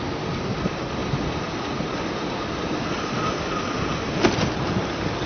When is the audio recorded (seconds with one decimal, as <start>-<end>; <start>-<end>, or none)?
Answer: 0.0-5.3